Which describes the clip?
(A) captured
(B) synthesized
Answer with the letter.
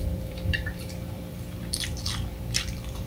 B